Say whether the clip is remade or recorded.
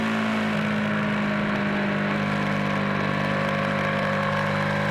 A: recorded